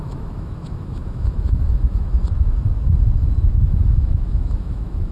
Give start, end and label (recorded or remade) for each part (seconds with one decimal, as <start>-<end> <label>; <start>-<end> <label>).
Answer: 0.0-2.2 remade; 2.2-4.0 recorded; 4.0-5.1 remade